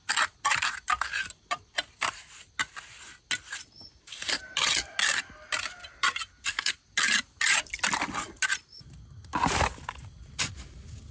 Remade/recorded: recorded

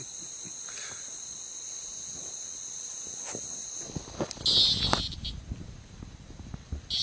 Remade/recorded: recorded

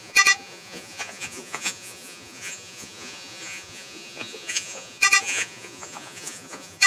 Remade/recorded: remade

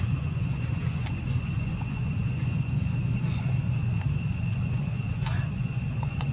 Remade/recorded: remade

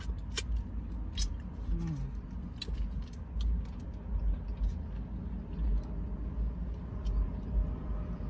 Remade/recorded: recorded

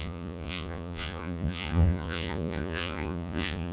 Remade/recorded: remade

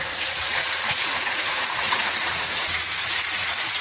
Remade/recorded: remade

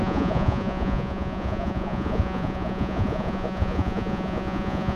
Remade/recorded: remade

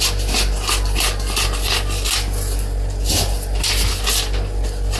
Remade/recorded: recorded